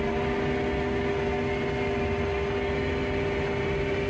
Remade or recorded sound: recorded